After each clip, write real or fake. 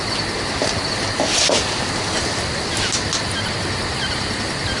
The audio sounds real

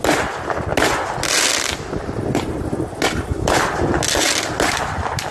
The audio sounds real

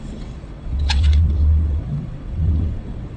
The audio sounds fake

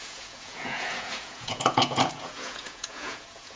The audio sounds fake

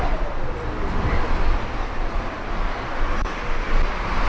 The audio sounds real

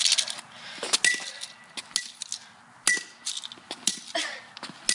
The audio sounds real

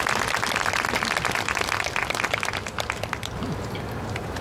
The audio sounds real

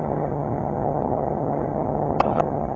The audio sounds fake